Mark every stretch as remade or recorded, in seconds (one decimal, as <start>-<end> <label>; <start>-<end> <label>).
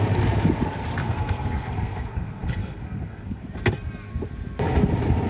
0.0-1.0 recorded; 1.0-3.4 remade; 3.4-5.3 recorded